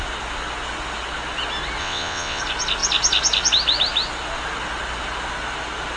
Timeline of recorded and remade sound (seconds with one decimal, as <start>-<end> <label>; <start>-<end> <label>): 0.0-1.8 recorded; 1.8-2.4 remade; 2.4-6.0 recorded